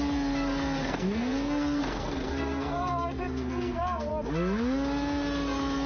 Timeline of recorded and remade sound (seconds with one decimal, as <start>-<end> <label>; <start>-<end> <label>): 0.0-0.8 recorded; 0.8-4.1 remade; 4.1-5.9 recorded